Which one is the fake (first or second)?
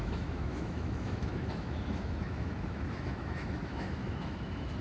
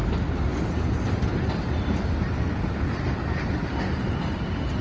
first